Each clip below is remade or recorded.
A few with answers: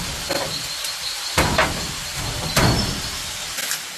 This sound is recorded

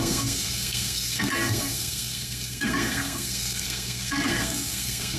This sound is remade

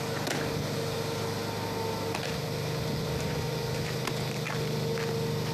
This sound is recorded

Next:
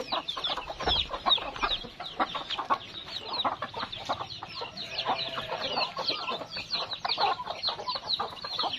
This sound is recorded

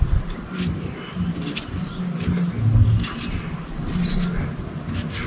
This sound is recorded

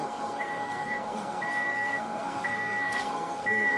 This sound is remade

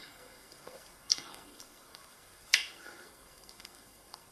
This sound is remade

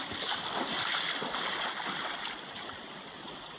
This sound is recorded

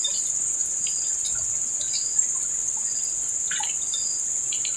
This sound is recorded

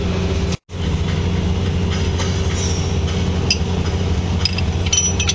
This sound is recorded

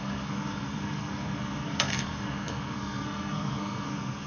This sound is remade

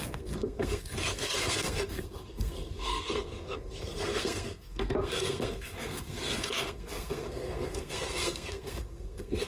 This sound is remade